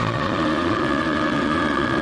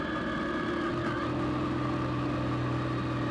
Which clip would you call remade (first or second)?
first